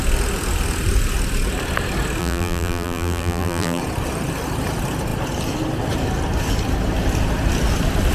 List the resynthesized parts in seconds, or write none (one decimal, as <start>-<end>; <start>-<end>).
2.2-3.8